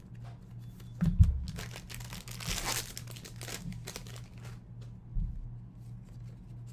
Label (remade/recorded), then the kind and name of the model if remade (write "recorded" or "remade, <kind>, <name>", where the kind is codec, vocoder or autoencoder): recorded